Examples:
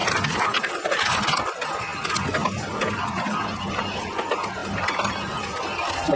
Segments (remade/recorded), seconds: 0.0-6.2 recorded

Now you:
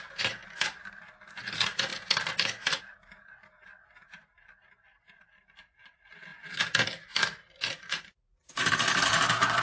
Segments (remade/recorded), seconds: 0.0-9.6 recorded

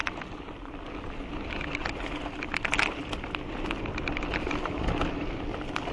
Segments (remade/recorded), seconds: 0.0-1.0 remade; 1.0-5.9 recorded

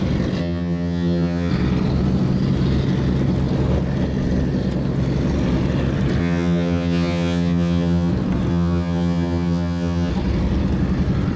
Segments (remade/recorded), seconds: 0.0-0.4 recorded; 0.4-1.5 remade; 1.5-6.2 recorded; 6.2-8.1 remade; 8.1-8.5 recorded; 8.5-10.1 remade; 10.1-11.4 recorded

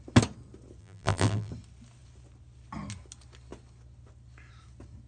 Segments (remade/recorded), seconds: 0.0-0.8 recorded; 0.8-1.5 remade; 1.5-5.1 recorded

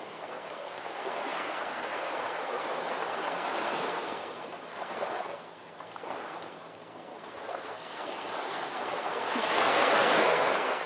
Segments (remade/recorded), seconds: 0.0-10.9 remade

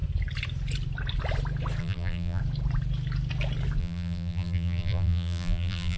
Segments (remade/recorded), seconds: 0.0-1.8 recorded; 1.8-2.4 remade; 2.4-3.8 recorded; 3.8-6.0 remade

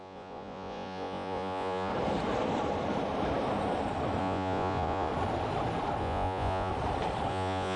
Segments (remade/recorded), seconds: 0.0-1.9 remade; 1.9-4.2 recorded; 4.2-5.1 remade; 5.1-6.0 recorded; 6.0-6.7 remade; 6.7-7.3 recorded; 7.3-7.8 remade